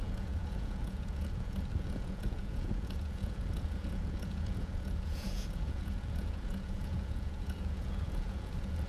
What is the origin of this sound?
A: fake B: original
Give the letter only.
A